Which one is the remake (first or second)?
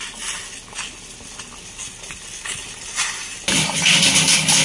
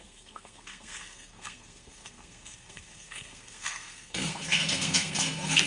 second